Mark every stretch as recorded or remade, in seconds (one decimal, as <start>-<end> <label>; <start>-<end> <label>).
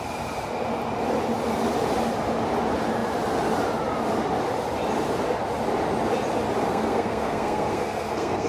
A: 0.0-6.7 recorded; 6.7-8.5 remade